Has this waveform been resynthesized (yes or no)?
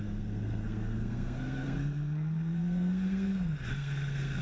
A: yes